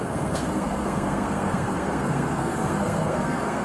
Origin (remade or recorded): remade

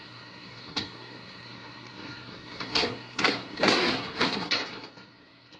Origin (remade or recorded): remade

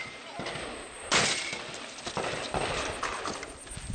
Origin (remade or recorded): recorded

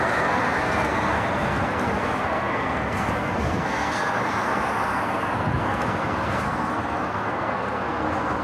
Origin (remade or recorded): remade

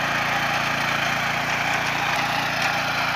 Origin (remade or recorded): recorded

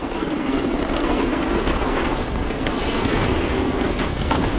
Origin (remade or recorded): remade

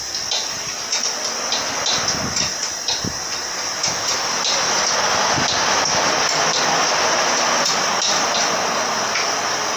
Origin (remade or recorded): recorded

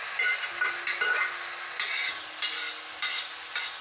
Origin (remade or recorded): recorded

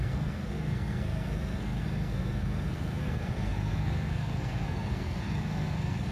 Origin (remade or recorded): remade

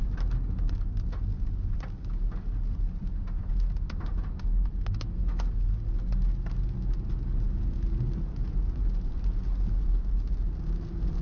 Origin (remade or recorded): recorded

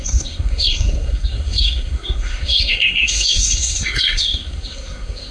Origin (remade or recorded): remade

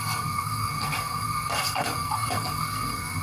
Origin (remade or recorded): remade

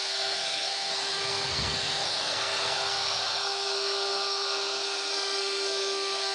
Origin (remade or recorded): remade